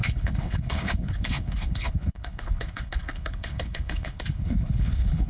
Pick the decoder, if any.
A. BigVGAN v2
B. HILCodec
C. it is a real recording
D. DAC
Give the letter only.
B